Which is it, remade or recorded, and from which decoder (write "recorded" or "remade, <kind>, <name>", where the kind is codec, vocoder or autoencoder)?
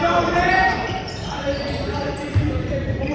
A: remade, vocoder, BigVGAN v2